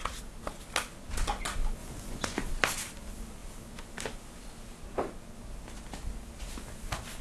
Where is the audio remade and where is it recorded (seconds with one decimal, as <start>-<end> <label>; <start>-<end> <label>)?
0.0-1.8 recorded; 1.8-2.5 remade; 2.5-7.2 recorded

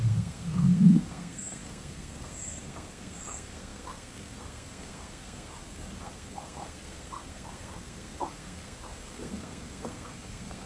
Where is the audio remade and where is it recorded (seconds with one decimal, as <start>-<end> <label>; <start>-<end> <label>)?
0.0-10.7 remade

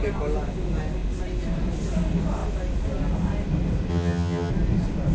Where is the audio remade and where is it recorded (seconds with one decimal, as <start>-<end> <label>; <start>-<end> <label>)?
0.0-3.9 recorded; 3.9-4.5 remade; 4.5-5.1 recorded

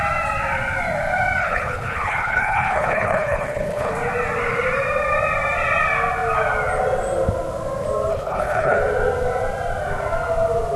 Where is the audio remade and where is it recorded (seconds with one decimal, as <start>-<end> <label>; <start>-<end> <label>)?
0.0-1.4 recorded; 1.4-3.9 remade; 3.9-8.1 recorded; 8.1-8.8 remade; 8.8-10.8 recorded

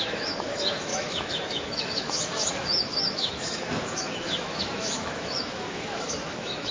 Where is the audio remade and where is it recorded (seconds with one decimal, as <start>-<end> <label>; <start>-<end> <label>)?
0.0-6.7 remade